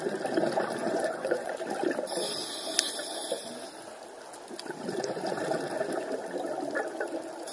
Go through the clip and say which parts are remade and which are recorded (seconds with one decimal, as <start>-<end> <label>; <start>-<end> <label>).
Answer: 0.0-0.8 recorded; 0.8-1.5 remade; 1.5-7.5 recorded